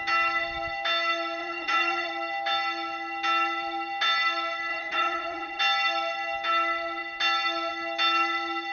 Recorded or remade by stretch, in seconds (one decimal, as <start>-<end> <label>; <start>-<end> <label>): 0.0-1.4 recorded; 1.4-2.1 remade; 2.1-4.7 recorded; 4.7-5.6 remade; 5.6-8.7 recorded